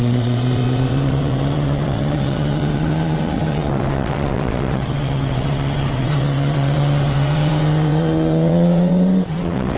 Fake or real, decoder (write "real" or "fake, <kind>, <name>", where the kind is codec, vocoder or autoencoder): fake, vocoder, WaveNeXt